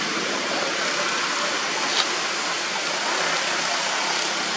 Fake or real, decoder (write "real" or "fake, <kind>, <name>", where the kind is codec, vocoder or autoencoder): real